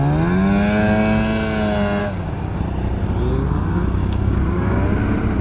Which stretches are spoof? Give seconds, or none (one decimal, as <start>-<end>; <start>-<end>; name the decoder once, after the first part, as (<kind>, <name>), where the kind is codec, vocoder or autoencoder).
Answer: 2.0-2.6 (codec, DAC); 4.0-4.9